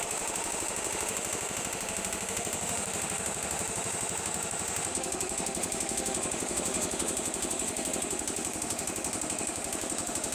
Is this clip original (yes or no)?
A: no